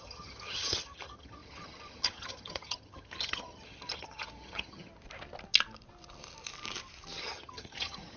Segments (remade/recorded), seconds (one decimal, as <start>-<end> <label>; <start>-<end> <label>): 0.0-4.9 remade; 4.9-7.2 recorded; 7.2-8.2 remade